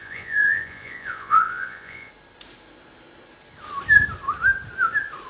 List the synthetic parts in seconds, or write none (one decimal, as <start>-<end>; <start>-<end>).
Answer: 0.0-2.1